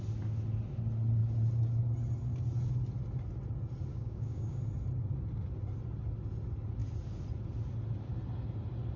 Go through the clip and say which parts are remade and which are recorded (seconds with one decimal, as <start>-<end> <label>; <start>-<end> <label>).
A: 0.0-3.9 recorded; 3.9-4.6 remade; 4.6-9.0 recorded